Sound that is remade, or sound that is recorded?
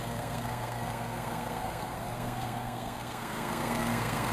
remade